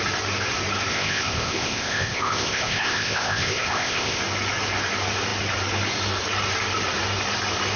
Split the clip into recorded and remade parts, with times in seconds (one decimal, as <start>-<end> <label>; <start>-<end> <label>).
0.0-0.9 recorded; 0.9-4.2 remade; 4.2-7.8 recorded